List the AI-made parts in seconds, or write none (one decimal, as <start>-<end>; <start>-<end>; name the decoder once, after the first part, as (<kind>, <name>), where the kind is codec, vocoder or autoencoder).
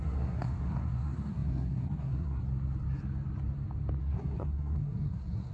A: 0.0-2.4 (codec, SNAC); 4.0-5.5